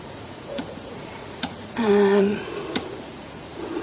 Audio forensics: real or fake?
fake